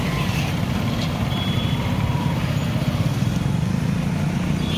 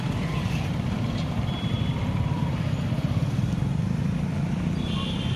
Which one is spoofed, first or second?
second